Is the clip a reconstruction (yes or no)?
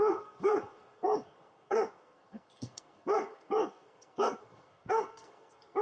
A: yes